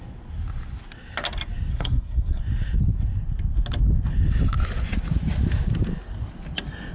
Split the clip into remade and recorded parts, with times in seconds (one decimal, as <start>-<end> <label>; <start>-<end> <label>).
0.0-1.7 recorded; 1.7-2.4 remade; 2.4-6.9 recorded

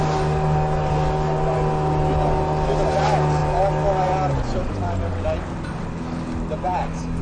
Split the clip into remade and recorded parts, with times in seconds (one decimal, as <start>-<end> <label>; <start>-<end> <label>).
0.0-7.2 recorded

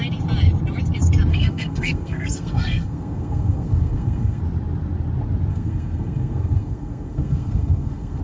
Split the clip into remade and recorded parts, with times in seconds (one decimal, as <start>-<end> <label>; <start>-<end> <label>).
0.0-1.3 recorded; 1.3-4.4 remade; 4.4-5.5 recorded; 5.5-8.2 remade

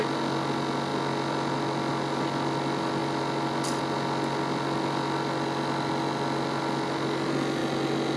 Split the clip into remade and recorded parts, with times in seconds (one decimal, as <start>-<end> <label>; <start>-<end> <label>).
0.0-8.2 recorded

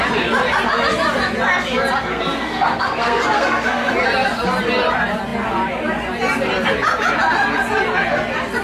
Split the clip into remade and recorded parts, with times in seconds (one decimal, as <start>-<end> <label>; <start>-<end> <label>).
0.0-2.0 recorded; 2.0-3.9 remade; 3.9-8.6 recorded